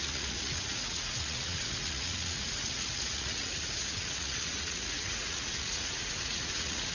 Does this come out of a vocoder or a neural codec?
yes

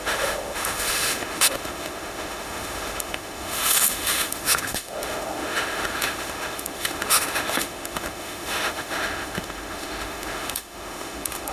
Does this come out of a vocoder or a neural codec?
yes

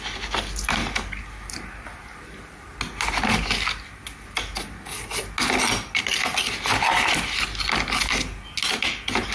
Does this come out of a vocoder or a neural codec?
no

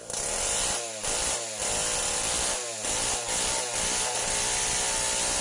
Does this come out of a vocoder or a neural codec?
no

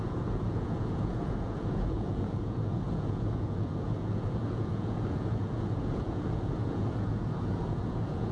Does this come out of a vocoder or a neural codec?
yes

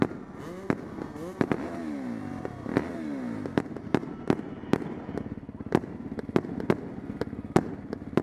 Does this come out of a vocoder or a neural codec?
no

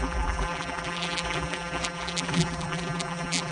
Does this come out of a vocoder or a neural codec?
yes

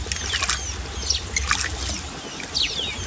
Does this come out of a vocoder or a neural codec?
no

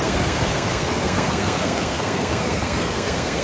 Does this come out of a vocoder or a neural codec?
yes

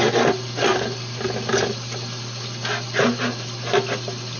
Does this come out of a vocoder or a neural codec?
no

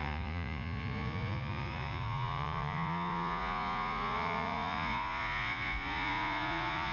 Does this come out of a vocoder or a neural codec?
yes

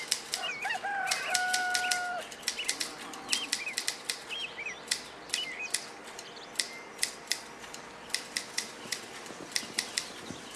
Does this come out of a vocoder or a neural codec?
no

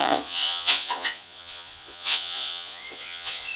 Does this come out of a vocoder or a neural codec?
yes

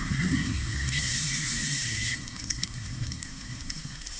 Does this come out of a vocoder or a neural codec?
yes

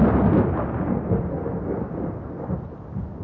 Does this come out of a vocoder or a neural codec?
no